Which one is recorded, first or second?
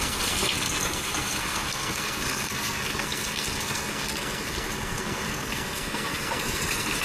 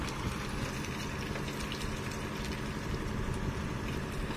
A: second